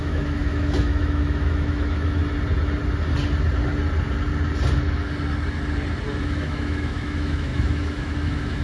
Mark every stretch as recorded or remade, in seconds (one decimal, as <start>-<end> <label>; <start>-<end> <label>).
0.0-2.2 remade; 2.2-6.2 recorded; 6.2-8.6 remade

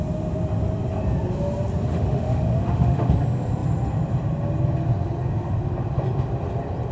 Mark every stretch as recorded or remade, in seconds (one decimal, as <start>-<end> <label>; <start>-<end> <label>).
0.0-1.9 recorded; 1.9-3.1 remade; 3.1-6.9 recorded

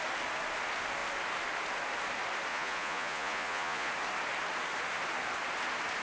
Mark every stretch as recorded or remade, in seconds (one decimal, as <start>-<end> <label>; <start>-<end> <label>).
0.0-2.5 recorded; 2.5-3.9 remade; 3.9-6.0 recorded